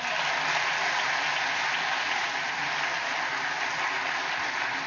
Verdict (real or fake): real